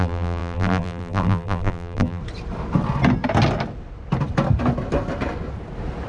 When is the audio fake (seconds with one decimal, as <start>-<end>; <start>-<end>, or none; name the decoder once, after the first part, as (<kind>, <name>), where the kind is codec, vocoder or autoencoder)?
0.0-2.2 (vocoder, BigVGAN v2)